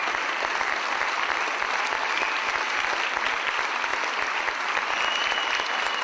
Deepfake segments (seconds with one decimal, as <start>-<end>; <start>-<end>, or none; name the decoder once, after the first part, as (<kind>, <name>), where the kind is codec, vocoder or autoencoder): none